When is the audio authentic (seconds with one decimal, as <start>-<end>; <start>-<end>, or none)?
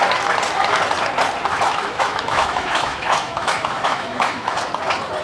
0.0-1.5; 4.6-5.2